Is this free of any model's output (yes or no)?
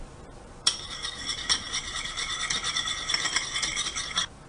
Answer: no